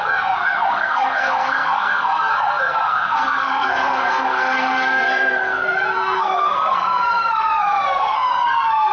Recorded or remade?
remade